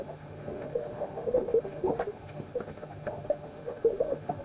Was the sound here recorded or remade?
remade